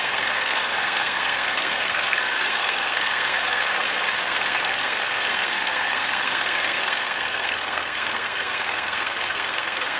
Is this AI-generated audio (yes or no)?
yes